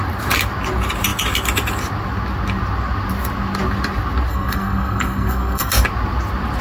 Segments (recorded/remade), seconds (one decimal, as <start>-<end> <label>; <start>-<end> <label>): 0.0-4.3 recorded; 4.3-5.7 remade; 5.7-6.6 recorded